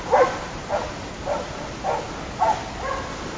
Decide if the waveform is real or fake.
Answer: real